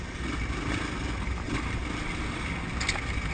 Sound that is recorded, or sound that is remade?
recorded